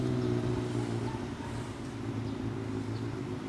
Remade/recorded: recorded